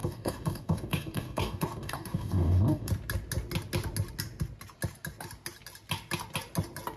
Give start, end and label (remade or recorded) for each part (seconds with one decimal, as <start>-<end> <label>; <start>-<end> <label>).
0.0-2.9 remade; 2.9-7.0 recorded

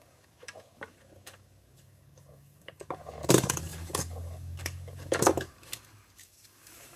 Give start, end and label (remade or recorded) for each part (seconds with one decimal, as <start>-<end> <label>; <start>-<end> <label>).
0.0-7.0 remade